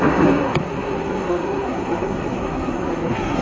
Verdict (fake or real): fake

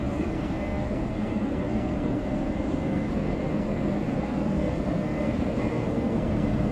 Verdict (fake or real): fake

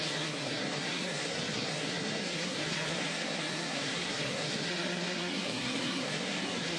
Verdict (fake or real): fake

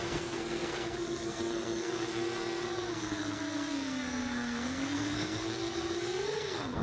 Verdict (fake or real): fake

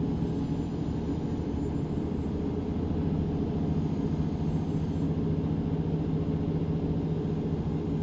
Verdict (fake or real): real